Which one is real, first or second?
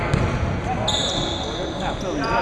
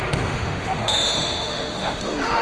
first